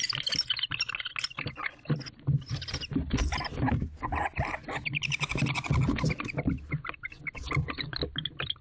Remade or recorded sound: recorded